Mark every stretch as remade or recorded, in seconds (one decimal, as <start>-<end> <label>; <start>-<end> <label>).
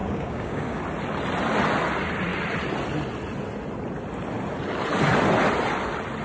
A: 0.0-0.8 remade; 0.8-6.2 recorded